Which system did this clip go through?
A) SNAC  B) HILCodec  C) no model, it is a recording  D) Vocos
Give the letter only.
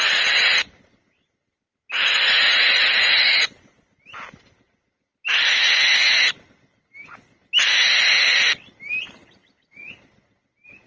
C